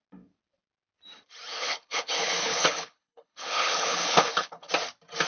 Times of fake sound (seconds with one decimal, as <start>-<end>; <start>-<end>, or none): 1.5-4.7